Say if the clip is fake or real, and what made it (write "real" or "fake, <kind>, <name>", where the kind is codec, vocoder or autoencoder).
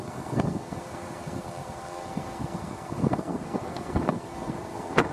fake, codec, SNAC